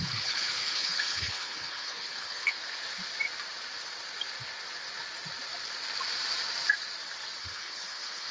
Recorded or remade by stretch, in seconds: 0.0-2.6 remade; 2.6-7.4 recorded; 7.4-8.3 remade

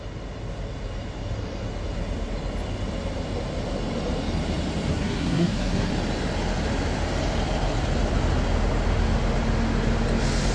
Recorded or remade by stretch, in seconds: 0.0-4.9 recorded; 4.9-5.9 remade; 5.9-10.5 recorded

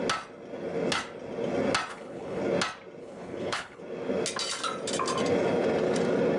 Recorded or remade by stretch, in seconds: 0.0-1.9 recorded; 1.9-2.4 remade; 2.4-3.0 recorded; 3.0-3.8 remade; 3.8-6.4 recorded

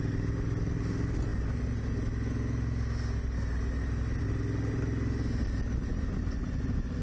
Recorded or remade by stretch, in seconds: 0.0-5.9 recorded; 5.9-7.0 remade

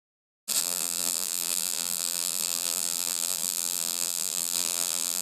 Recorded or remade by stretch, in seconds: 0.0-0.6 recorded; 0.6-5.2 remade

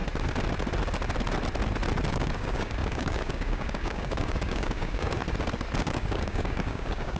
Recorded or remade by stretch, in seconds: 0.0-2.1 recorded; 2.1-5.2 remade; 5.2-5.8 recorded; 5.8-7.2 remade

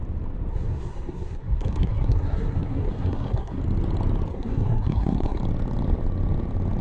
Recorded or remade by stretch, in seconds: 0.0-0.5 recorded; 0.5-3.6 remade; 3.6-4.3 recorded; 4.3-5.4 remade; 5.4-6.8 recorded

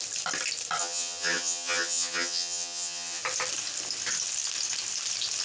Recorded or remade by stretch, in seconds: 0.0-0.8 recorded; 0.8-3.2 remade; 3.2-5.4 recorded